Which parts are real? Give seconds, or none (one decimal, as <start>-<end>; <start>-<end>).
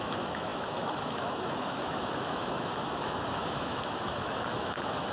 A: none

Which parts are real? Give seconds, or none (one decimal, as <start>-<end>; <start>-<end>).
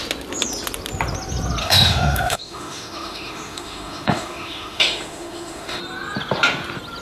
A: 0.0-1.6; 5.8-7.0